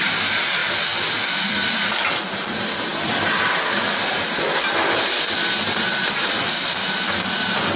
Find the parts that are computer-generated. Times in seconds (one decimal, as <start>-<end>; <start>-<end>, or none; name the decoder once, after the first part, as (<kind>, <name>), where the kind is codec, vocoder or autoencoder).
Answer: none